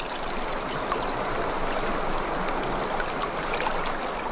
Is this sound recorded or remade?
recorded